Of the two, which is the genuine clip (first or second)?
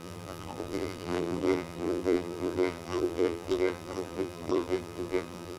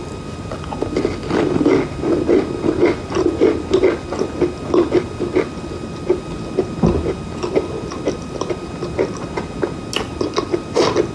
second